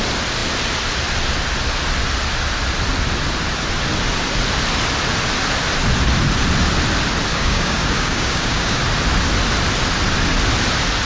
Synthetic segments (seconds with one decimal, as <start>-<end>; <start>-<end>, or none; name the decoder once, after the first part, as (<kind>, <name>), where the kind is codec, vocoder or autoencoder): 7.3-8.8 (codec, DAC)